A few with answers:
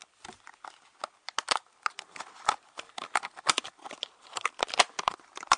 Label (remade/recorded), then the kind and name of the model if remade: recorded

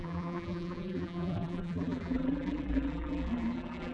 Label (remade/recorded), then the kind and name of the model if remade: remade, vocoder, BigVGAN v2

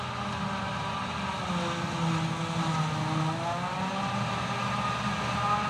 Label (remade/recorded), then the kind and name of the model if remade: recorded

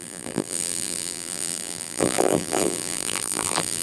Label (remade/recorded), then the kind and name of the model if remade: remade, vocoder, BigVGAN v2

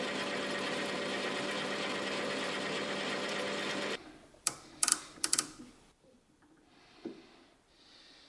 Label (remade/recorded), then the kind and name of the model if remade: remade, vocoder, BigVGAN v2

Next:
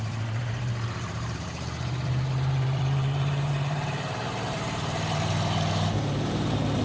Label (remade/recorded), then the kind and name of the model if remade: remade, vocoder, BigVGAN v2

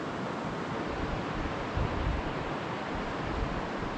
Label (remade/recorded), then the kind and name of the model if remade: remade, vocoder, BigVGAN v2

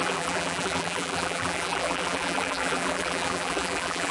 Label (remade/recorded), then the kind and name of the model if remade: remade, vocoder, BigVGAN v2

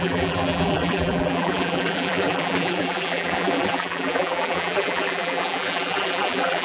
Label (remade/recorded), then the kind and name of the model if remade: remade, vocoder, BigVGAN v2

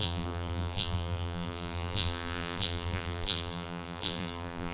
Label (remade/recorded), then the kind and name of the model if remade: remade, vocoder, BigVGAN v2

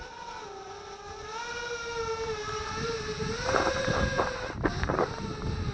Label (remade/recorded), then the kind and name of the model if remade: remade, vocoder, BigVGAN v2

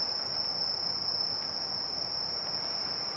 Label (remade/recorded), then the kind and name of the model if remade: recorded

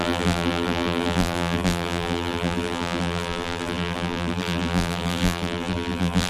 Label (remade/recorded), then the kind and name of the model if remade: remade, vocoder, BigVGAN v2